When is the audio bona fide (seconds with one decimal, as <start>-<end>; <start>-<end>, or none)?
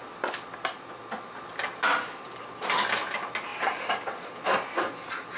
0.0-5.4